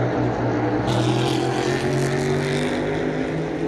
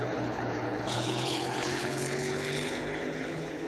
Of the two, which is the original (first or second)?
first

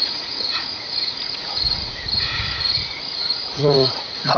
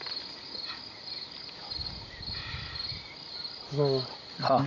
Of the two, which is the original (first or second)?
second